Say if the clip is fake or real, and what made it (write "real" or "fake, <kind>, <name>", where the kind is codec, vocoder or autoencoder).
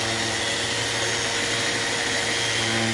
real